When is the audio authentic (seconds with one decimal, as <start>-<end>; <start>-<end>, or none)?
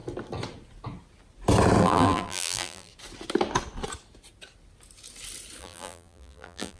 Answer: 0.0-1.8; 2.9-5.6